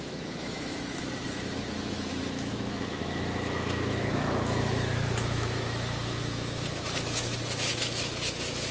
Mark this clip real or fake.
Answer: fake